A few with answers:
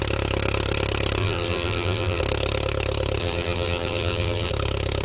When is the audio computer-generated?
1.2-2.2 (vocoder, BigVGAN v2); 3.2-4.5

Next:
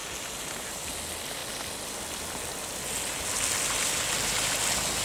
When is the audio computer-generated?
none

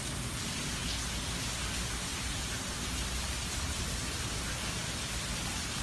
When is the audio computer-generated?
2.1-3.8 (vocoder, BigVGAN v2)